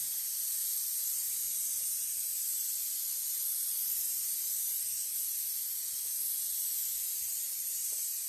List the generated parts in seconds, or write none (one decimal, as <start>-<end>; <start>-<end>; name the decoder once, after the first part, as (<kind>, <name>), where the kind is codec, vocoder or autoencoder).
0.0-3.2 (vocoder, BigVGAN v2); 7.3-8.3